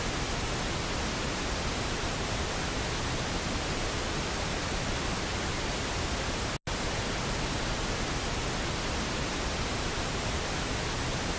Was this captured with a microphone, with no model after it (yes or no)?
yes